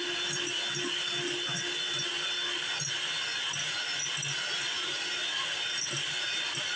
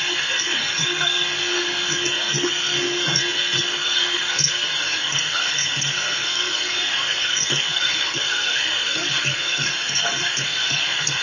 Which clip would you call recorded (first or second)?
first